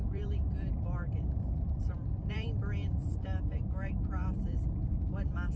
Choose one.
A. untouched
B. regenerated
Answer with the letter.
B